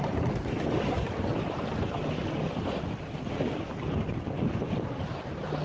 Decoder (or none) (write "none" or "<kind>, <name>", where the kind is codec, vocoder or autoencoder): none